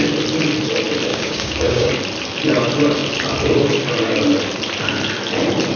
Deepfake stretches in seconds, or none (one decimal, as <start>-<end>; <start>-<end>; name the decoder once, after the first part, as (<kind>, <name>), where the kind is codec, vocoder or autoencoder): 1.1-1.9 (codec, DAC)